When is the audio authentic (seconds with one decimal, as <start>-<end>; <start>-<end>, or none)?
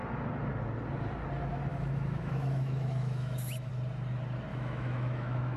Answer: 0.0-1.7; 3.7-4.5